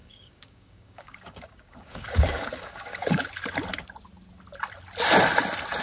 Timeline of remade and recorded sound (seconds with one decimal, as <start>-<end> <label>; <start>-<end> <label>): 0.0-3.3 remade; 3.3-5.8 recorded